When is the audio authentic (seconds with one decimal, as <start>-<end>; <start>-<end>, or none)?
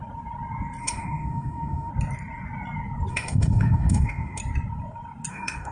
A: 0.0-0.8; 1.9-3.1; 4.4-5.3